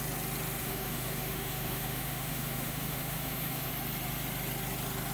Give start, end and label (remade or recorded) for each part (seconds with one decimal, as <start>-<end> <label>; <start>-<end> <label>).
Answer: 0.0-0.6 recorded; 0.6-3.7 remade; 3.7-5.1 recorded